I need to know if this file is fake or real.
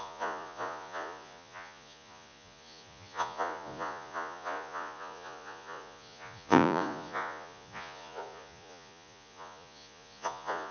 fake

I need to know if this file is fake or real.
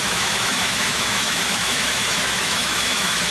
fake